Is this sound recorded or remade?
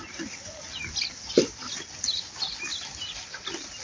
recorded